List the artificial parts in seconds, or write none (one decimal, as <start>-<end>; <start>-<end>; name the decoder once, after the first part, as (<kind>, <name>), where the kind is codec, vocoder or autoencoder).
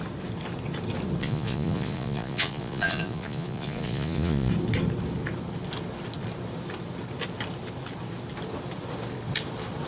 1.2-4.5 (vocoder, Vocos)